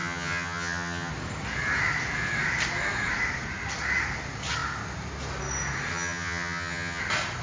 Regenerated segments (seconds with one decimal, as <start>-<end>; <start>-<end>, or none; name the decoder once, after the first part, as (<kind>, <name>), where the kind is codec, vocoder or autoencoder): 0.0-1.1 (vocoder, HiFi-GAN); 5.9-7.0